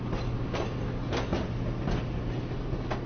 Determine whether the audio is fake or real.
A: real